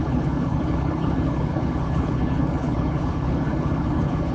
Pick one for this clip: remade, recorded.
remade